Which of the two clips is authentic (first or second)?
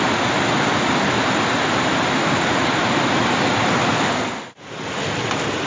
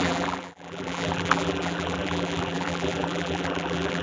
first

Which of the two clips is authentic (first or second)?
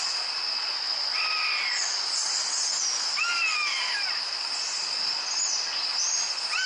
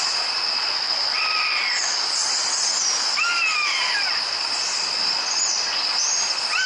first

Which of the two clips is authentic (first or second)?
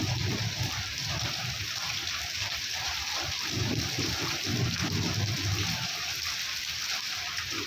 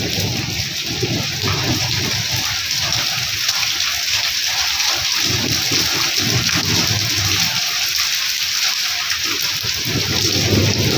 second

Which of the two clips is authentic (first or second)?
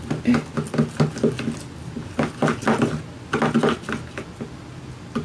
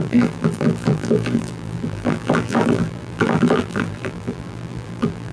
first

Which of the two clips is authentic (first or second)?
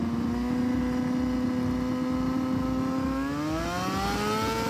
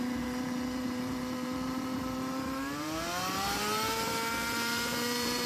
first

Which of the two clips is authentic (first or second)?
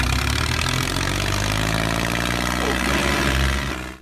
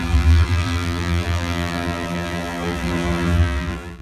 first